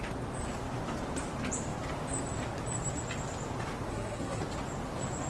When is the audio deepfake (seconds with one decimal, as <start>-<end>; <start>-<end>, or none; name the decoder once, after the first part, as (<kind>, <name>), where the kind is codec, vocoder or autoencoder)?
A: 3.9-4.4 (codec, SNAC)